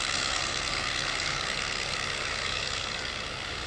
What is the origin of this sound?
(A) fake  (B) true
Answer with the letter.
A